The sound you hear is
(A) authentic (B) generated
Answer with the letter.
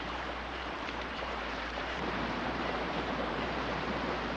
B